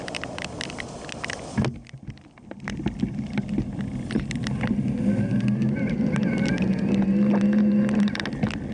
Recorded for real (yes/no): yes